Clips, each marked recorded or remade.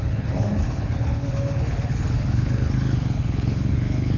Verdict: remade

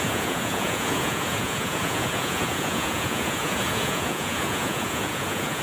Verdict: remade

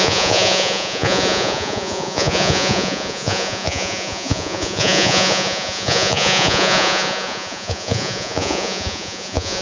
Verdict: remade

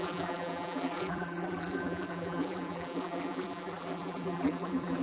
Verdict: remade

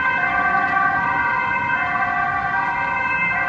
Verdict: recorded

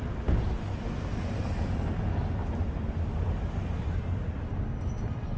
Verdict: recorded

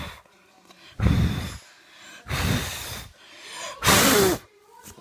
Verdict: recorded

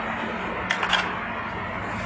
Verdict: recorded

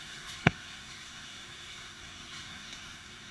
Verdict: remade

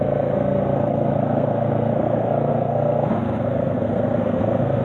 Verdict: remade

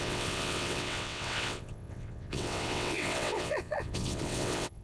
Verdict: remade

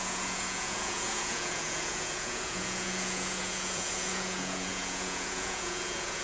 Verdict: remade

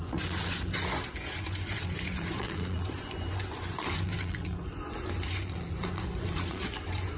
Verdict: remade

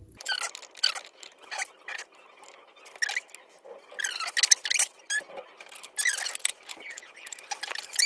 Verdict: recorded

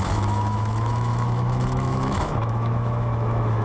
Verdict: remade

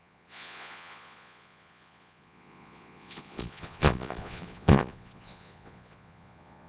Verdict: remade